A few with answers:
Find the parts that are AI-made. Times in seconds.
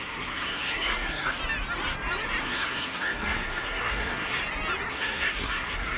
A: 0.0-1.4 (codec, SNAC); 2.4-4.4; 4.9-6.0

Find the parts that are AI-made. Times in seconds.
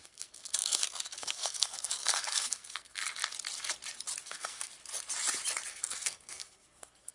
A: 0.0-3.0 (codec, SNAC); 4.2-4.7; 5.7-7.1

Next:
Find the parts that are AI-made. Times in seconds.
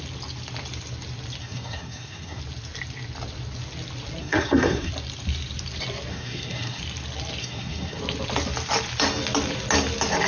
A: 1.4-2.4 (codec, SNAC); 4.2-4.9; 6.1-6.8; 7.4-8.0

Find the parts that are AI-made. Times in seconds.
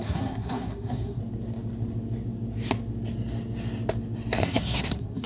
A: 0.0-1.2 (codec, SNAC); 4.4-5.3